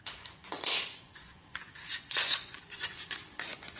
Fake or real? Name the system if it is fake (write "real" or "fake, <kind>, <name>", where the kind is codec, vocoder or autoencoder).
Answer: fake, vocoder, Vocos